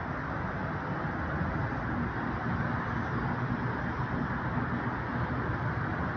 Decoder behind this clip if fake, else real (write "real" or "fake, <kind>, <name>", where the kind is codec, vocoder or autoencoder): real